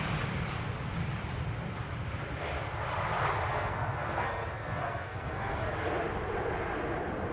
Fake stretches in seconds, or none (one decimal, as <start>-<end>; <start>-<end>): 3.5-5.7

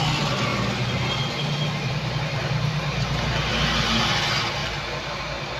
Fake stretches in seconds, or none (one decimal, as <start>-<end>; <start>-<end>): none